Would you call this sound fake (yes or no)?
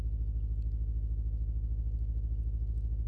no